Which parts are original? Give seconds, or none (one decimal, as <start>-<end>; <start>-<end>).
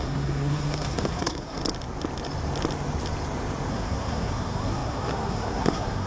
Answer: 1.6-3.7